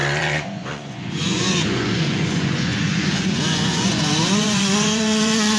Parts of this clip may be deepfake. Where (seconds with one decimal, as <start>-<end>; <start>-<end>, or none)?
0.0-5.6